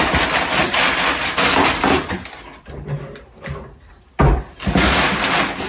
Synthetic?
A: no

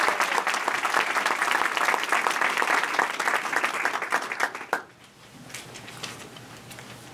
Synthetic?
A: no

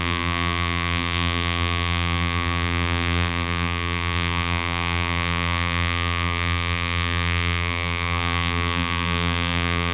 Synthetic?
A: yes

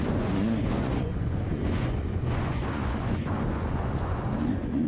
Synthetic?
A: yes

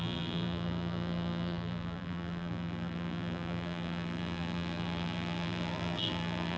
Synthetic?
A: yes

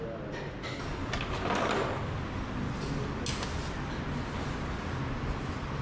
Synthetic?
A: no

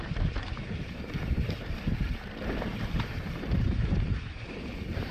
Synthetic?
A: yes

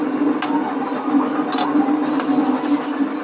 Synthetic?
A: no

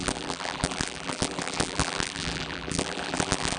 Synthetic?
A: yes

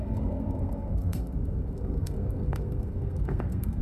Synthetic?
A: yes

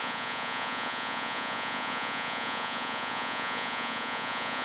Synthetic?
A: yes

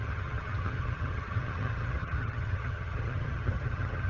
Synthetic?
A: yes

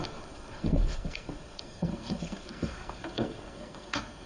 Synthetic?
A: yes